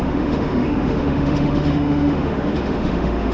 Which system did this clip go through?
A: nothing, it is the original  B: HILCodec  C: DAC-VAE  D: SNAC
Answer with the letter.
C